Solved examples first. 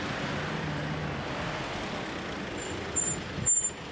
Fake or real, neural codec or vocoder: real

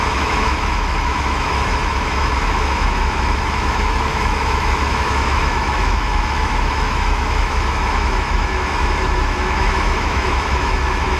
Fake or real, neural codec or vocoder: fake, autoencoder, DAC-VAE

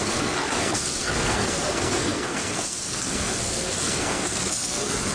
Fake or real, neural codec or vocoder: fake, codec, SNAC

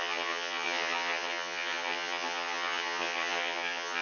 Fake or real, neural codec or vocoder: fake, vocoder, HiFi-GAN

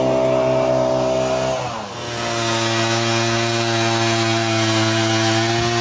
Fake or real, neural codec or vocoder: real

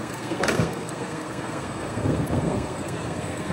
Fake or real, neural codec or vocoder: fake, codec, SNAC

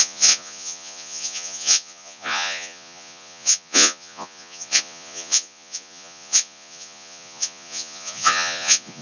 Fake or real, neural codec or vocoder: fake, vocoder, Vocos